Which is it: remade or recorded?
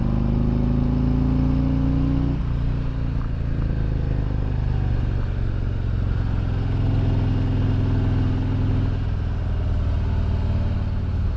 recorded